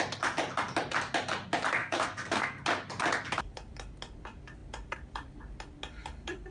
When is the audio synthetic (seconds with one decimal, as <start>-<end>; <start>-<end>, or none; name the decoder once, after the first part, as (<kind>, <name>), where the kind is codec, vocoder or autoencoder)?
1.8-2.6 (codec, SNAC)